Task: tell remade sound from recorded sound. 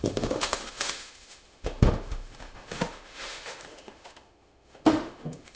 remade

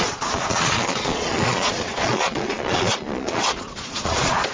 remade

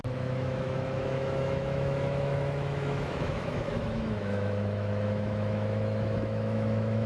remade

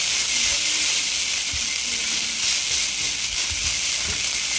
recorded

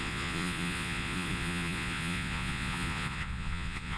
remade